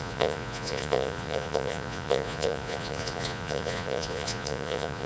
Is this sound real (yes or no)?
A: no